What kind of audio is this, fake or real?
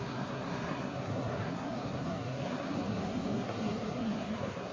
fake